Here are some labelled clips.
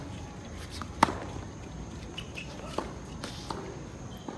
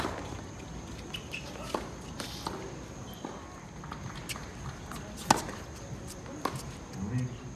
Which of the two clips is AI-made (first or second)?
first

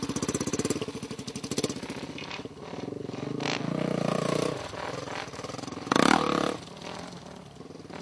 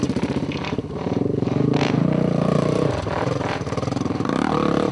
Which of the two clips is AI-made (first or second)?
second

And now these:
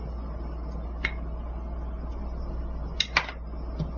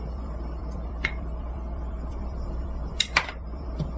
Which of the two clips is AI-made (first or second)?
second